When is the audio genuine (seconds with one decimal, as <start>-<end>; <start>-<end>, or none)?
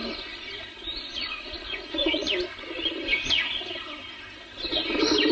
0.0-1.1; 2.3-5.3